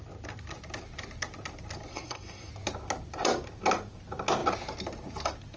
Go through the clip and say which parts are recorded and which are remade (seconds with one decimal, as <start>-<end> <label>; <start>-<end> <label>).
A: 0.0-1.9 recorded; 1.9-2.5 remade; 2.5-5.6 recorded